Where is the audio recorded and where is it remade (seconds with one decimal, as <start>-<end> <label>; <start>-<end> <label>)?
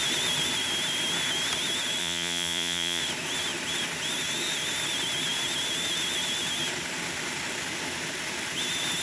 0.0-2.0 recorded; 2.0-3.0 remade; 3.0-9.0 recorded